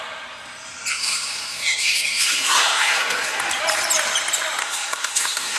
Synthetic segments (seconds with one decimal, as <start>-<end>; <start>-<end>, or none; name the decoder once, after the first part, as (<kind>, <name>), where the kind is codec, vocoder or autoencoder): 0.9-3.4 (codec, SNAC); 4.6-5.6